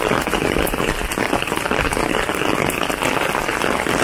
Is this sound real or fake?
real